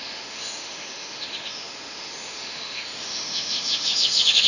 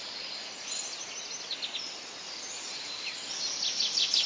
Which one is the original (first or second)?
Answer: second